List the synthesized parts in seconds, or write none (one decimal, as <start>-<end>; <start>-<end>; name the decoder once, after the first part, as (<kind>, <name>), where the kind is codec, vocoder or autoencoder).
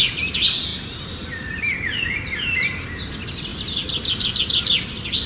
none